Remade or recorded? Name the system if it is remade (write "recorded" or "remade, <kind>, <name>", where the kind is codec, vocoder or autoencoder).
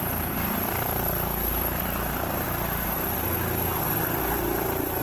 remade, vocoder, BigVGAN v2